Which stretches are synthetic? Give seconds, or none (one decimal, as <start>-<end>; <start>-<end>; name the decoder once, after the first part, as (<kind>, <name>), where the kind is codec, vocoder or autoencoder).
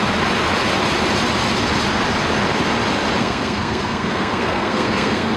3.2-5.4 (codec, SNAC)